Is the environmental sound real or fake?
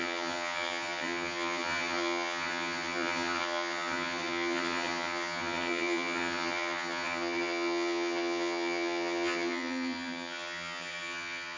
fake